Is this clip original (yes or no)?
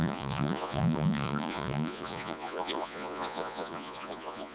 no